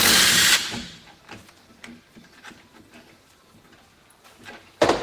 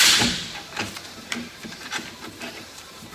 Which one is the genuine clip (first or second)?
first